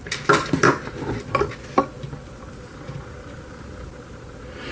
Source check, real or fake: real